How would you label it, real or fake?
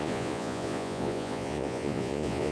fake